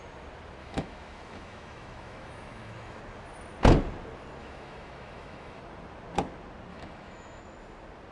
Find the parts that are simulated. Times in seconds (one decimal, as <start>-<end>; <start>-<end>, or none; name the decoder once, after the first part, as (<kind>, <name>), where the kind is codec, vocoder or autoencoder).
0.6-3.0 (autoencoder, DAC-VAE); 4.4-5.6; 6.7-7.4